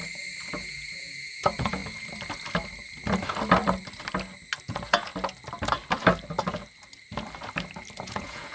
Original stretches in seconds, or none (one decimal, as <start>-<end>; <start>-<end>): 0.0-0.5; 1.8-4.6; 5.1-8.0